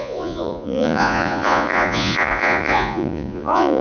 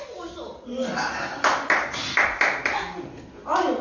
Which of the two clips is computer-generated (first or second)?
first